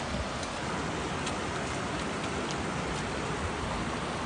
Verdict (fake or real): real